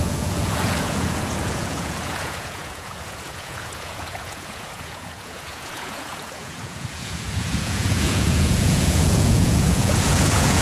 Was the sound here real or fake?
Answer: fake